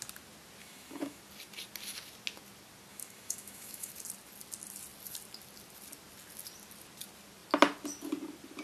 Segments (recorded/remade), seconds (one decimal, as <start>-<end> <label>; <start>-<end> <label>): 0.0-0.6 recorded; 0.6-1.2 remade; 1.2-2.9 recorded; 2.9-3.9 remade; 3.9-8.6 recorded